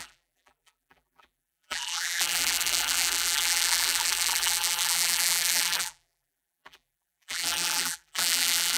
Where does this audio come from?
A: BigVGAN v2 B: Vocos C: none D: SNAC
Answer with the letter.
A